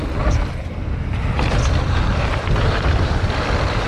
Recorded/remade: recorded